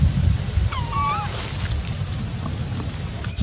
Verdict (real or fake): real